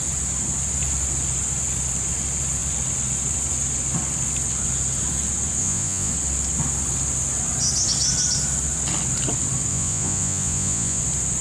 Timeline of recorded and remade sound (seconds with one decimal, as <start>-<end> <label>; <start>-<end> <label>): 0.0-5.6 recorded; 5.6-6.1 remade; 6.1-9.7 recorded; 9.7-11.0 remade; 11.0-11.4 recorded